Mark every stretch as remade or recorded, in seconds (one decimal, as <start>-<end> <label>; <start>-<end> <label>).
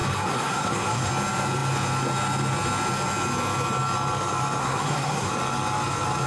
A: 0.0-1.1 remade; 1.1-4.6 recorded; 4.6-5.3 remade; 5.3-6.3 recorded